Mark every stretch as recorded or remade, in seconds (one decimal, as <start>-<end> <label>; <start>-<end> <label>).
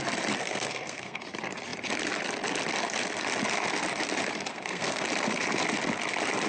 0.0-0.4 recorded; 0.4-1.2 remade; 1.2-4.5 recorded; 4.5-5.0 remade; 5.0-6.5 recorded